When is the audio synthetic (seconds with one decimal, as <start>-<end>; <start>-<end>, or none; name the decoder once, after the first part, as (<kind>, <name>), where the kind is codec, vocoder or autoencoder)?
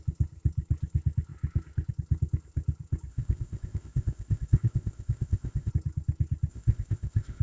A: 3.1-5.7 (codec, ZipCodec); 6.5-7.4